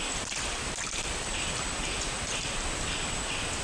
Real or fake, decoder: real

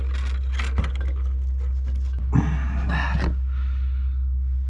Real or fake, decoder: real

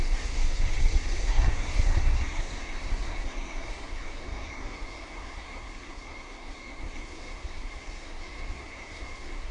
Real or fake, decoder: fake, codec, SNAC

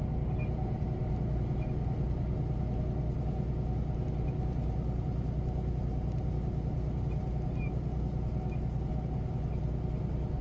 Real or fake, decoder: real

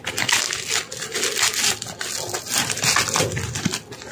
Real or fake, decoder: real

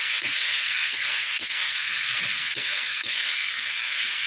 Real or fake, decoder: fake, codec, SNAC